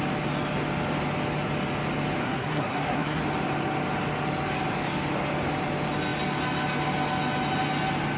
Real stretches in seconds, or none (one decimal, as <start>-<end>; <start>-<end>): 0.0-2.2; 3.2-8.2